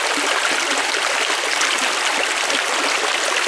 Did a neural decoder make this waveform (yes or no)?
no